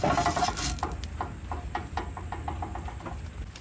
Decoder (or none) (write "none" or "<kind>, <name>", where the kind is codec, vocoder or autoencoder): none